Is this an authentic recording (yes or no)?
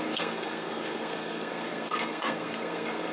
no